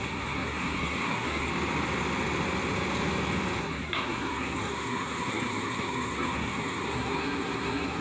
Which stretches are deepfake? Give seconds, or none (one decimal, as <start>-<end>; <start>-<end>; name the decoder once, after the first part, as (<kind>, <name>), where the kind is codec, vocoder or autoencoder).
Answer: 0.0-1.5 (codec, SNAC); 3.6-8.0